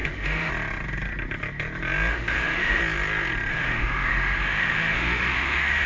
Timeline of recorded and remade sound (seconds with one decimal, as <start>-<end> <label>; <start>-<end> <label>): 0.0-0.5 remade; 0.5-2.1 recorded; 2.1-2.8 remade; 2.8-3.5 recorded; 3.5-5.9 remade